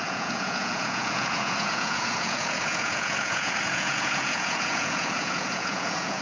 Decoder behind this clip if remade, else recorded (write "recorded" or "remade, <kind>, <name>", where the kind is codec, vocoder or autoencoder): remade, vocoder, Vocos